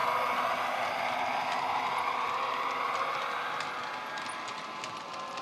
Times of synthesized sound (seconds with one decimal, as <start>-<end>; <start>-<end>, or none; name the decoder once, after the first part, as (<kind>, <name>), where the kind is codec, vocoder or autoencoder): none